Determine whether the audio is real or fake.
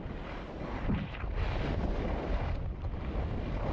real